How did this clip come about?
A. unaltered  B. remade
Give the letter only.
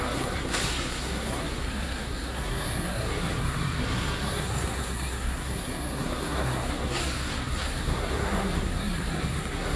B